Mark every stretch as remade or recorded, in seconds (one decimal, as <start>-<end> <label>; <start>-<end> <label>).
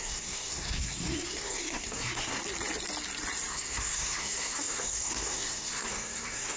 0.0-2.4 remade; 2.4-3.5 recorded; 3.5-6.6 remade